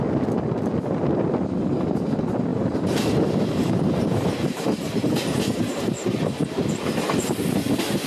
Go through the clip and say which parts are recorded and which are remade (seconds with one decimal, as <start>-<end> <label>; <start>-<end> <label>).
0.0-2.5 recorded; 2.5-6.7 remade; 6.7-8.1 recorded